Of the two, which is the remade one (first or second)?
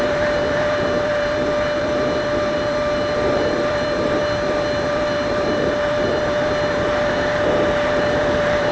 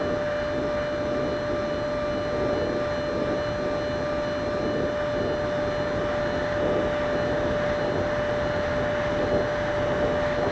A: first